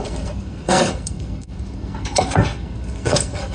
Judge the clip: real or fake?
fake